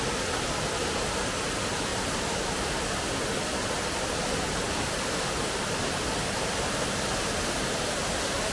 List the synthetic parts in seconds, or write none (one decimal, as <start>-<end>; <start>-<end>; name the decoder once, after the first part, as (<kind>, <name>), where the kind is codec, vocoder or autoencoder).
none